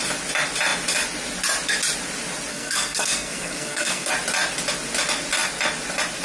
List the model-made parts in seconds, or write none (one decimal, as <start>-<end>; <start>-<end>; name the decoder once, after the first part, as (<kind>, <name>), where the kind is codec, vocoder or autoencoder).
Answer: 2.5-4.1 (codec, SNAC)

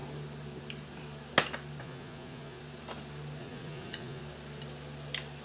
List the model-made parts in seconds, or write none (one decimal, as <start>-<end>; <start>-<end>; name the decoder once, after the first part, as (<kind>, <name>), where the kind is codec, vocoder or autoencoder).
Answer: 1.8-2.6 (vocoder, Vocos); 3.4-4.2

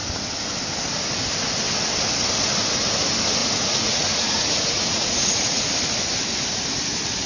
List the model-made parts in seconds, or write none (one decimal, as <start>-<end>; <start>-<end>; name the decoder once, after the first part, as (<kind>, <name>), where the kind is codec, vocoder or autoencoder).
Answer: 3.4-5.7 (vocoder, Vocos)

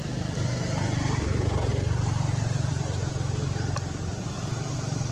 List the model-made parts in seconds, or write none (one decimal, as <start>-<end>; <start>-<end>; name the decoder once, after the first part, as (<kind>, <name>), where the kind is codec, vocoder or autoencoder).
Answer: 1.7-2.7 (vocoder, BigVGAN v2); 4.1-5.1

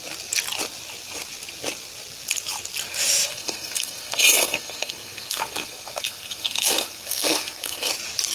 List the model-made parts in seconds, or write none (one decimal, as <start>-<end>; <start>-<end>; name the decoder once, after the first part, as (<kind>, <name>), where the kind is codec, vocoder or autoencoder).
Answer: 3.3-7.9 (codec, SNAC)

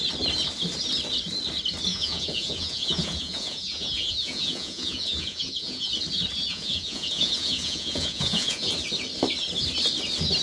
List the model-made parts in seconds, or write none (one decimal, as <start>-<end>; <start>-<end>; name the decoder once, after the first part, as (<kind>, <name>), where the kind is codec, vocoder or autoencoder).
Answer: 1.9-5.9 (vocoder, Vocos); 6.5-8.7